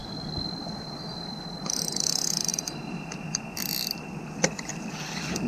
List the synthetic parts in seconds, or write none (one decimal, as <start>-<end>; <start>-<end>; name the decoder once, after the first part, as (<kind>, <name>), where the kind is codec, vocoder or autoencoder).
none